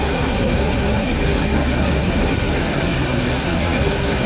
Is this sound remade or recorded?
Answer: remade